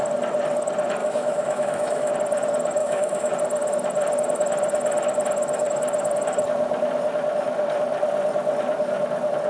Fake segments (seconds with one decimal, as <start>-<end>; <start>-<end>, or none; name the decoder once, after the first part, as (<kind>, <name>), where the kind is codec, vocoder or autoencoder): 1.0-2.1 (autoencoder, DAC-VAE); 2.8-3.3